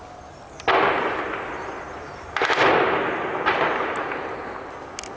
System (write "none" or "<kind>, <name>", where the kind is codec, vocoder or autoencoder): none